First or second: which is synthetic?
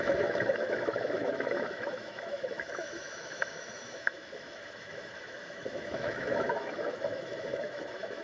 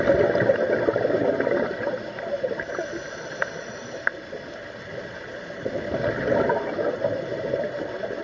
first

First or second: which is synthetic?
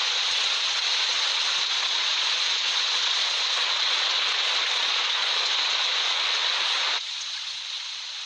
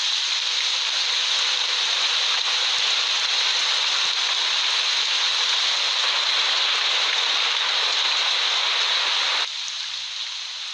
first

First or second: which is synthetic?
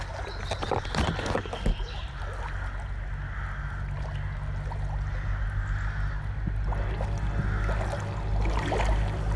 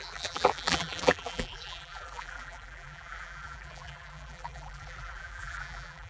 second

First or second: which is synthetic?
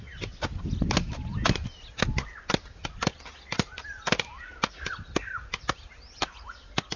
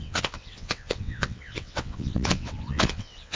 second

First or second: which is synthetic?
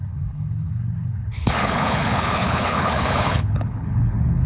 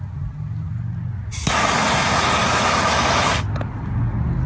first